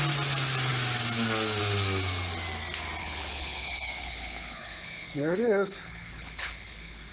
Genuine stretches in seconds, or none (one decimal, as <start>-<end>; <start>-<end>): 0.0-3.0